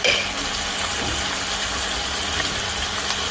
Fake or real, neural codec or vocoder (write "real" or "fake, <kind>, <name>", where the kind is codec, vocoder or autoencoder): real